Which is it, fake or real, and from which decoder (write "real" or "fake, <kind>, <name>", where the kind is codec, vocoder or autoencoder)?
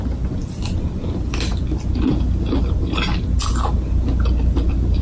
real